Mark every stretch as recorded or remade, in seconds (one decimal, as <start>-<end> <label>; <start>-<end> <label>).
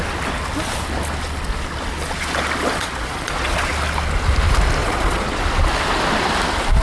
0.0-2.7 recorded; 2.7-3.7 remade; 3.7-4.8 recorded; 4.8-5.4 remade; 5.4-6.8 recorded